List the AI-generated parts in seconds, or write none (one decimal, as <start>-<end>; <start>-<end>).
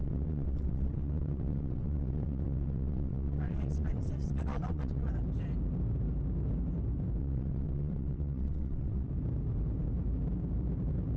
0.0-5.1; 7.2-9.1